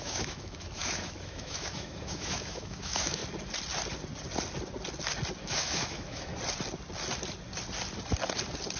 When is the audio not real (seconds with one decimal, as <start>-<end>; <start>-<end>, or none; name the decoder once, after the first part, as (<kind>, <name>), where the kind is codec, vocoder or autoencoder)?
0.0-3.2 (autoencoder, DAC-VAE); 5.4-6.3